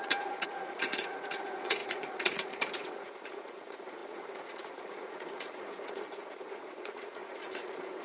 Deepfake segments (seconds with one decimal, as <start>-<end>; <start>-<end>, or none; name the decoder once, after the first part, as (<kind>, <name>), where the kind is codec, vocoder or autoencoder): 0.0-8.0 (vocoder, Vocos)